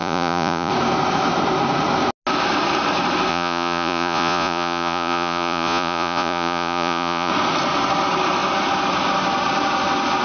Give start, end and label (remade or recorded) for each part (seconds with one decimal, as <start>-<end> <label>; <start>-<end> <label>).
0.0-0.7 remade; 0.7-3.3 recorded; 3.3-7.3 remade; 7.3-10.2 recorded